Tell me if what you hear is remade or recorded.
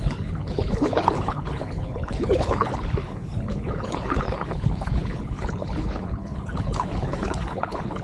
remade